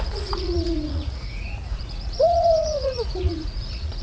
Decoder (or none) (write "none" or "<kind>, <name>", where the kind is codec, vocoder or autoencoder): vocoder, Vocos